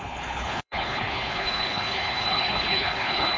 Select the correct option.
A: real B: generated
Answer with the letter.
B